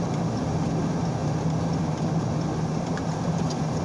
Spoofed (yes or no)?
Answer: no